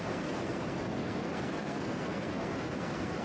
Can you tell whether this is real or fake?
fake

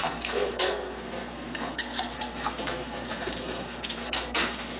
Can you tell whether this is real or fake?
fake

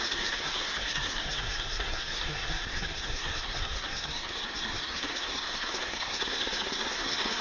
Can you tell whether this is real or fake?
fake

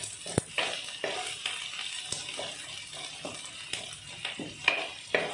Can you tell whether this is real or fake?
real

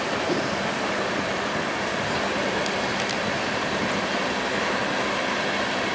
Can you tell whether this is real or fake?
real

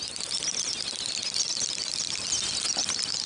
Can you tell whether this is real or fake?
real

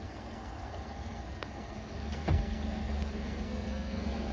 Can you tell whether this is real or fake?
fake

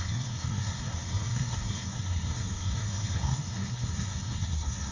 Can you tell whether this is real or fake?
fake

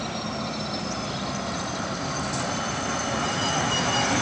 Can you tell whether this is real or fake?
real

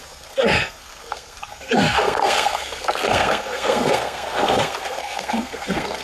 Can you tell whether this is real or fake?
fake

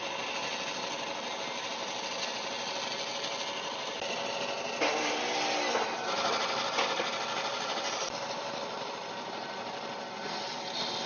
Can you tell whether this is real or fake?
real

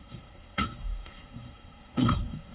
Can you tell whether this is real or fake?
fake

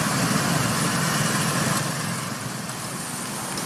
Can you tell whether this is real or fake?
real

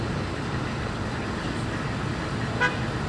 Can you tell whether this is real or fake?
real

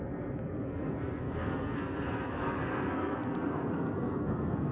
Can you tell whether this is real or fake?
fake